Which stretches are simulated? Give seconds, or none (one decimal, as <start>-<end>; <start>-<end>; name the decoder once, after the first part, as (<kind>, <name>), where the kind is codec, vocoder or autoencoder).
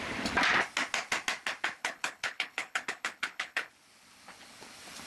1.8-3.7 (codec, HILCodec)